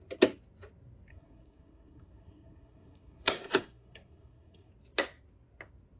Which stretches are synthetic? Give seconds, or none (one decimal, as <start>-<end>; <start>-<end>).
1.1-4.7